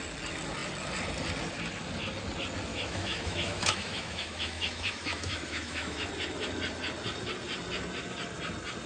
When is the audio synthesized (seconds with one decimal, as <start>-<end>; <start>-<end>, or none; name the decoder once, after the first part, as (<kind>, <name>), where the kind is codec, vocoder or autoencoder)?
2.7-6.1 (autoencoder, DAC-VAE)